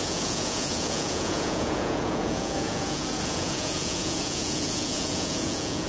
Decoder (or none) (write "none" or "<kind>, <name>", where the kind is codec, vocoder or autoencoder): vocoder, Vocos